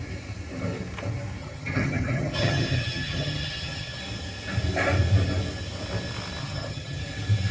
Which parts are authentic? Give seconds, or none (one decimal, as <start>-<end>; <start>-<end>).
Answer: 0.0-1.4; 4.0-6.4; 7.0-7.5